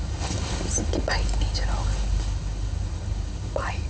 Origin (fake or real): real